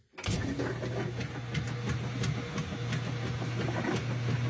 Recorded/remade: recorded